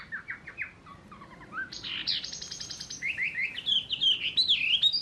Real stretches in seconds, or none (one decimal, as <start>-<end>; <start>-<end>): 0.0-5.0